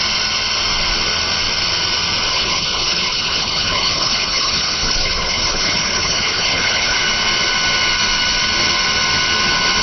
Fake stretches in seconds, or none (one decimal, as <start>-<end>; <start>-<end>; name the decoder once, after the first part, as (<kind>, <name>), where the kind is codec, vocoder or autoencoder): 2.3-7.0 (codec, HILCodec)

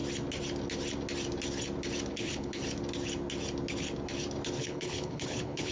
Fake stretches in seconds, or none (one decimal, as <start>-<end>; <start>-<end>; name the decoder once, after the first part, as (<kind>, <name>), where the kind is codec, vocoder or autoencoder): 2.1-2.6 (codec, HILCodec); 4.6-5.7